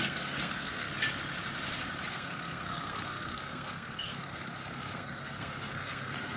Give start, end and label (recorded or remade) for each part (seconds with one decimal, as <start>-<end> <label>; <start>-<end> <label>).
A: 0.0-0.9 remade; 0.9-2.1 recorded; 2.1-6.4 remade